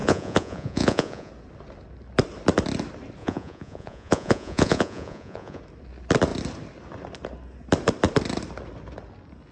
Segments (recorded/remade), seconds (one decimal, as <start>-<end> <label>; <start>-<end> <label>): 0.0-1.3 remade; 1.3-3.2 recorded; 3.2-5.6 remade; 5.6-9.5 recorded